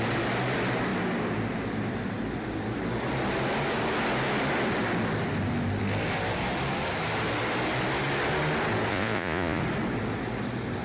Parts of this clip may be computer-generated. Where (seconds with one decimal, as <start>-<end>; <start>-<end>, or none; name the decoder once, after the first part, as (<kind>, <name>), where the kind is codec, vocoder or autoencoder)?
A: 8.9-9.6 (vocoder, Vocos)